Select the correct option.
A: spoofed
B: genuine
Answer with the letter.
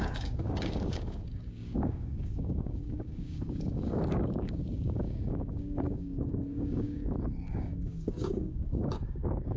A